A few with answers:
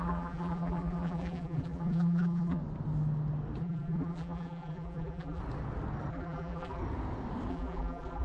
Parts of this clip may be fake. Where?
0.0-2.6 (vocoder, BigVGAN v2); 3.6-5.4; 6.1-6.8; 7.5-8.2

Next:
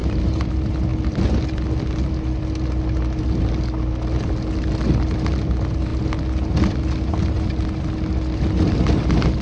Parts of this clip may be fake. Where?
0.0-0.5 (vocoder, BigVGAN v2)

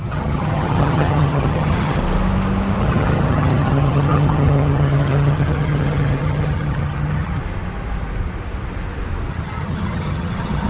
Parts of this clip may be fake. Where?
0.0-2.0 (vocoder, HiFi-GAN); 2.8-7.4; 9.3-10.7

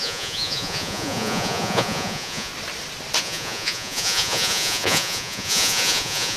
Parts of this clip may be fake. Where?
0.0-2.5 (vocoder, Vocos); 3.2-6.4